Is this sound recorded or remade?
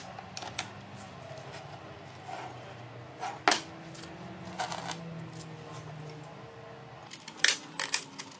recorded